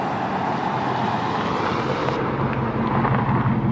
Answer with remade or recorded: recorded